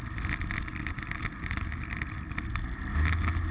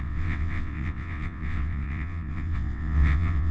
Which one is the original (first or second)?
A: first